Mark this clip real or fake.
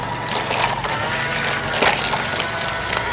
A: real